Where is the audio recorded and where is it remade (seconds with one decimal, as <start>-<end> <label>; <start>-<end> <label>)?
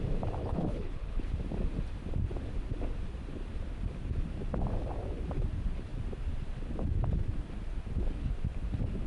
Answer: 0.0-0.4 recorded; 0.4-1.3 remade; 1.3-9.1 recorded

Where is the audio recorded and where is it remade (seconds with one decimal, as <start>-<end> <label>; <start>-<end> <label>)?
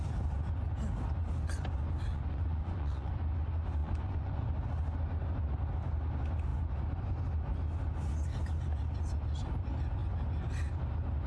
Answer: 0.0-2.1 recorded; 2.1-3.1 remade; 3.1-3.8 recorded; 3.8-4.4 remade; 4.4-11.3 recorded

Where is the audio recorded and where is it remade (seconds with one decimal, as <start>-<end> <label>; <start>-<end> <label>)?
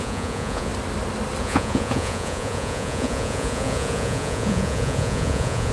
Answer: 0.0-0.7 remade; 0.7-1.4 recorded; 1.4-5.7 remade